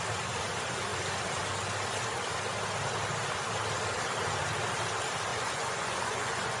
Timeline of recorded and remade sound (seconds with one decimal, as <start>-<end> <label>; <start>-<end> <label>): 0.0-5.3 recorded; 5.3-6.6 remade